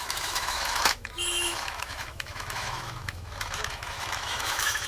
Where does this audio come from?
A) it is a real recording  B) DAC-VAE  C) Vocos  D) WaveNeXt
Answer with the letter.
B